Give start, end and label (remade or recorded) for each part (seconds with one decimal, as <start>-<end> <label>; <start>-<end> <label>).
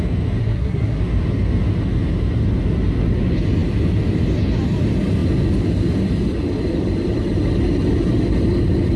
0.0-0.4 recorded; 0.4-1.0 remade; 1.0-9.0 recorded